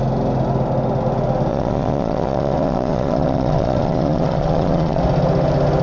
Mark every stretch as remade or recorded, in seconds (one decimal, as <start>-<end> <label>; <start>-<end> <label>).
0.0-1.5 recorded; 1.5-5.0 remade; 5.0-5.8 recorded